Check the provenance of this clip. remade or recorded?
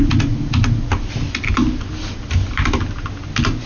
recorded